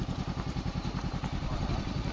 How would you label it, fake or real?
fake